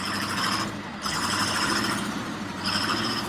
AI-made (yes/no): yes